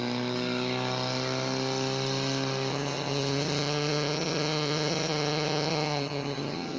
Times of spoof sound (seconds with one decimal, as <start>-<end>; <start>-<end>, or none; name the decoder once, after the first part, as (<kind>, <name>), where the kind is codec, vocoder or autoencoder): 2.7-6.8 (vocoder, HiFi-GAN)